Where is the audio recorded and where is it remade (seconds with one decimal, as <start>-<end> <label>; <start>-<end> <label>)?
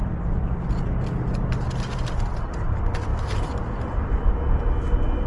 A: 0.0-5.3 recorded